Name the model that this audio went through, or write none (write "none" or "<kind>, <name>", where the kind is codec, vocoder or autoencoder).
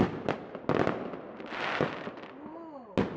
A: none